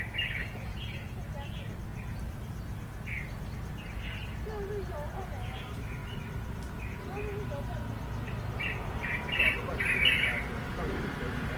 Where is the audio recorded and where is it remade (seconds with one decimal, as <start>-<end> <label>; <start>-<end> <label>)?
0.0-0.4 recorded; 0.4-1.3 remade; 1.3-11.6 recorded